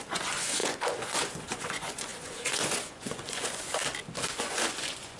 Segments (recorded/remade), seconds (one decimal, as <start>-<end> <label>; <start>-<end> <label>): 0.0-3.8 remade; 3.8-4.3 recorded; 4.3-5.2 remade